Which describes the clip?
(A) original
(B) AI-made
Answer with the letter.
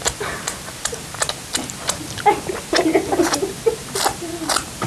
A